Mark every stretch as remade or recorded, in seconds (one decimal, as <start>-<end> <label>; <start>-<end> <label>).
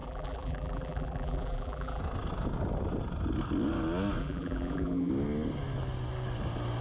0.0-2.0 remade; 2.0-4.2 recorded; 4.2-5.1 remade; 5.1-6.8 recorded